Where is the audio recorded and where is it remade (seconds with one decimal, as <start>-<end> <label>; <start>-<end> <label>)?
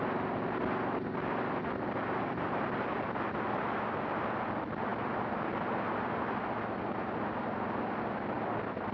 0.0-8.9 recorded